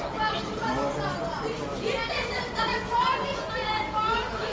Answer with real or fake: real